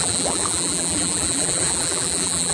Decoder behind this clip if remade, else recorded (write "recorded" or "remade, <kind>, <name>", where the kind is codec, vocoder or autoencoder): remade, vocoder, BigVGAN v2